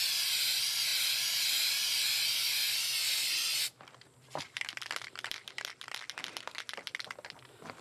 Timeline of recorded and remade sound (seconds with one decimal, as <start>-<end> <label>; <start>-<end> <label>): 0.0-7.8 recorded